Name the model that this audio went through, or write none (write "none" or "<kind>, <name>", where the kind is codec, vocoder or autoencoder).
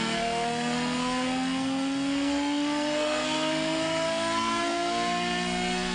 codec, SNAC